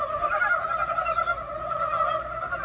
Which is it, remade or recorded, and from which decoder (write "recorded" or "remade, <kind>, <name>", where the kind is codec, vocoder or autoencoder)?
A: recorded